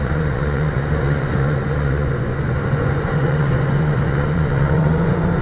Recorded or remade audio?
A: remade